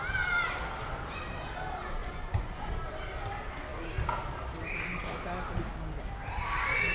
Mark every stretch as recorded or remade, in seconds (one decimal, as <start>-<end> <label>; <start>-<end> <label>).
0.0-2.0 recorded; 2.0-2.7 remade; 2.7-6.9 recorded